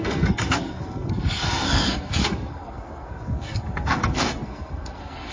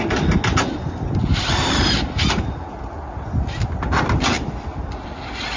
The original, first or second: second